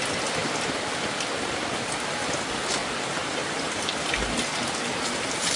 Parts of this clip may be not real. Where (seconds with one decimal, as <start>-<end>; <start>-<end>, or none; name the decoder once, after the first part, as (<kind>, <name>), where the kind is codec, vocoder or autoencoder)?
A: none